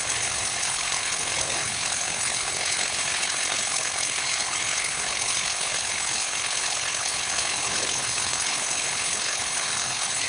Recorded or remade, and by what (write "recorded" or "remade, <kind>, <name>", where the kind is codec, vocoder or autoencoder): remade, codec, HILCodec